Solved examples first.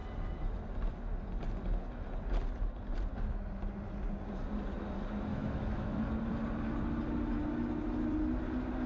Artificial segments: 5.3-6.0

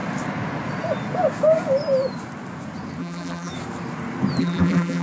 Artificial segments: 3.0-3.5; 4.4-5.0

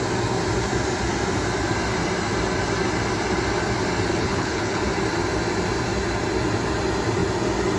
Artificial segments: 4.1-4.8

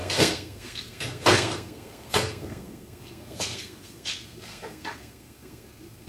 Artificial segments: 0.0-6.1

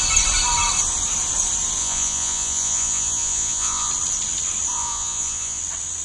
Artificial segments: 1.8-3.9; 4.7-5.6

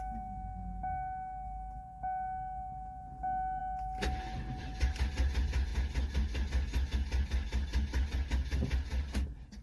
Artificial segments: none